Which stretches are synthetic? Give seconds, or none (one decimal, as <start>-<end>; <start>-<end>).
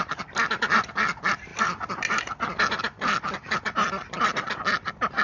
none